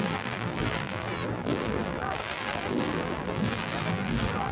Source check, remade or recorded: remade